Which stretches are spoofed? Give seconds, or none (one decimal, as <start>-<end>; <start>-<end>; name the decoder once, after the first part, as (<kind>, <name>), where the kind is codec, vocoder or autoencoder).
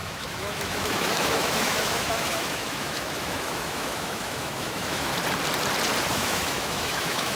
0.0-5.1 (autoencoder, DAC-VAE); 6.1-7.4